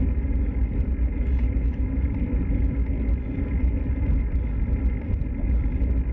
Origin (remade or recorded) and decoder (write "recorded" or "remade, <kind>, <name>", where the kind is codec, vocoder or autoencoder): recorded